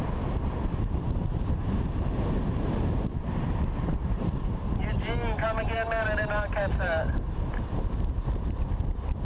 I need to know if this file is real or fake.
fake